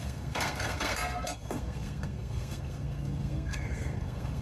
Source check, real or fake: fake